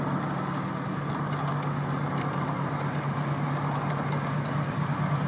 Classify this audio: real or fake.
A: real